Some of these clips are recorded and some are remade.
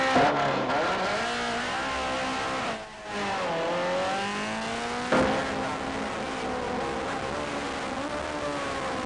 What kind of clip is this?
recorded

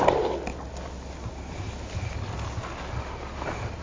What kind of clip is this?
recorded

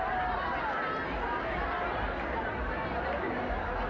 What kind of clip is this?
recorded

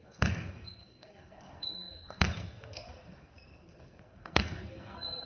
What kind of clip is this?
remade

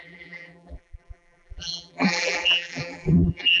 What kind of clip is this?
remade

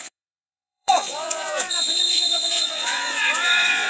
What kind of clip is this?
remade